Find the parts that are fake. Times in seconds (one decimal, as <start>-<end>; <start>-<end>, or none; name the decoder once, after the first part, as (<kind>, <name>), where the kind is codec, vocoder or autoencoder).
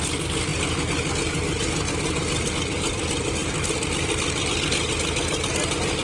3.4-4.6 (vocoder, BigVGAN v2)